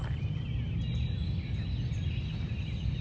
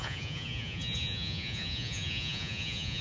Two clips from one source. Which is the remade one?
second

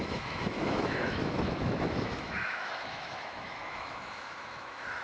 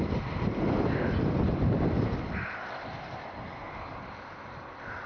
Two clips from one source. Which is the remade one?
first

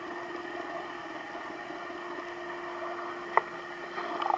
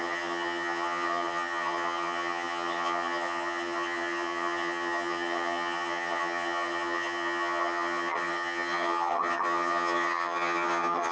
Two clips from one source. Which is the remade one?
second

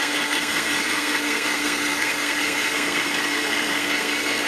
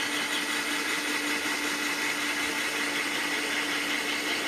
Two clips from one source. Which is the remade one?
first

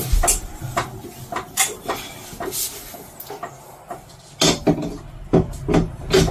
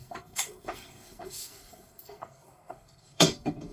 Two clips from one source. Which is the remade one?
second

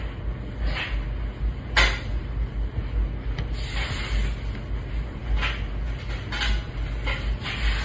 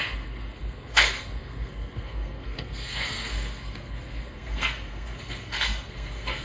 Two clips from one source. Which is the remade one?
second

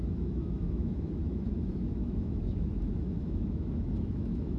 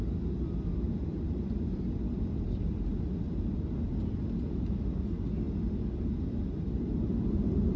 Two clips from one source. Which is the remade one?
first